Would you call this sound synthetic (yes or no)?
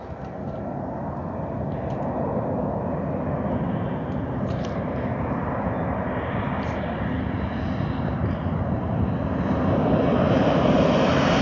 no